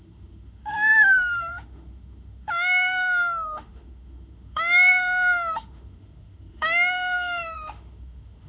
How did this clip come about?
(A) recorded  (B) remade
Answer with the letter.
B